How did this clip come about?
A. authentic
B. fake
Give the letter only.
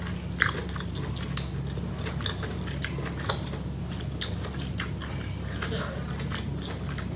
A